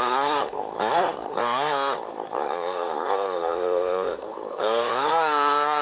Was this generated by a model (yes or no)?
yes